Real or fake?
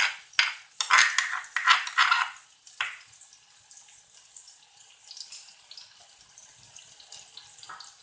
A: real